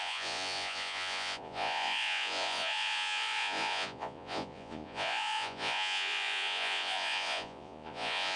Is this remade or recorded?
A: remade